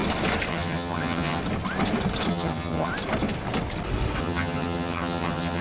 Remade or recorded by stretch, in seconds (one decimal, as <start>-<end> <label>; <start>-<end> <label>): 0.0-0.5 recorded; 0.5-1.4 remade; 1.4-2.3 recorded; 2.3-2.9 remade; 2.9-4.2 recorded; 4.2-5.6 remade